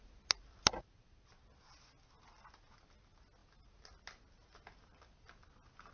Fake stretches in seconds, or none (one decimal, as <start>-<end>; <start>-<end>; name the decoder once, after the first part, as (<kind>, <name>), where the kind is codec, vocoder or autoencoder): none